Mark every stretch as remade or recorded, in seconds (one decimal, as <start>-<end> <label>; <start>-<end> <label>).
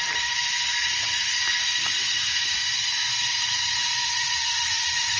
0.0-0.8 recorded; 0.8-2.3 remade; 2.3-3.3 recorded; 3.3-5.2 remade